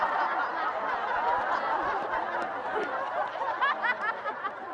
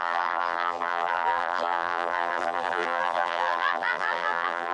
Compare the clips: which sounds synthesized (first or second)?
second